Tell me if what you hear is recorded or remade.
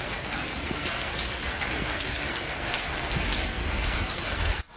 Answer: remade